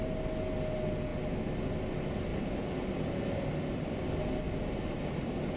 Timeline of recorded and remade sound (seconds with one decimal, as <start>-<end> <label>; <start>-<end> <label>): 0.0-5.6 recorded